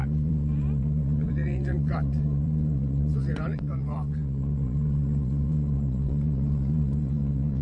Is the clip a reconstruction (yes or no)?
yes